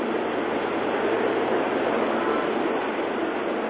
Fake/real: real